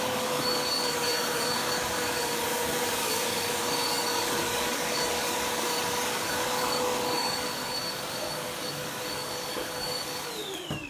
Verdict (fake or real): fake